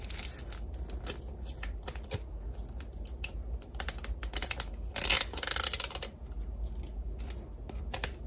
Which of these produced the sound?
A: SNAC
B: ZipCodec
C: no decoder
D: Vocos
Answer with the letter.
C